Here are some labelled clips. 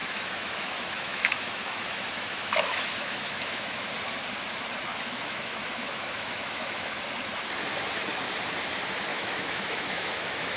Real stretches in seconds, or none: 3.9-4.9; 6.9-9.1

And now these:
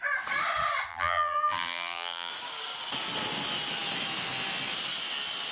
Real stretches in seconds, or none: 0.0-0.9; 2.3-5.5

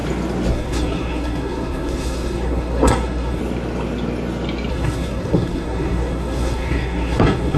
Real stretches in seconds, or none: 0.0-0.5; 3.4-4.7